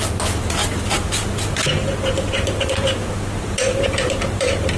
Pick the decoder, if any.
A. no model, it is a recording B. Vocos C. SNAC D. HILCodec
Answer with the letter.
A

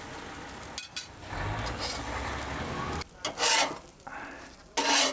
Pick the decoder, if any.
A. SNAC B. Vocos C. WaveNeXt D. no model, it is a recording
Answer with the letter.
D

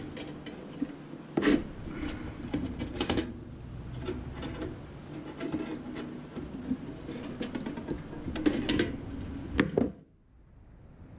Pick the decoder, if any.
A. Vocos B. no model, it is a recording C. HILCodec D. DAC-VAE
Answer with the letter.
B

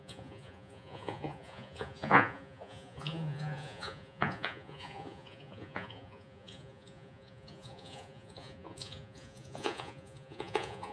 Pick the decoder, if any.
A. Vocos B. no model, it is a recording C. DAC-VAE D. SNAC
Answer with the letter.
A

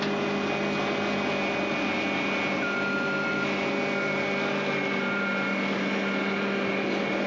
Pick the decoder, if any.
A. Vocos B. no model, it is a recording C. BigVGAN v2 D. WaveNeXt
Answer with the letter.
B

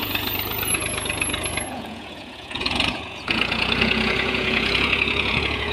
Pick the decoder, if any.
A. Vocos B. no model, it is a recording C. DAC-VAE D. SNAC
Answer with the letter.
A